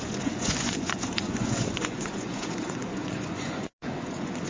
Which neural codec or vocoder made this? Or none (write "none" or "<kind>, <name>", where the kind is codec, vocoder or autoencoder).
vocoder, Vocos